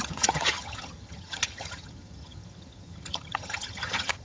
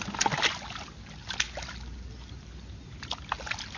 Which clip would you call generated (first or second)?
first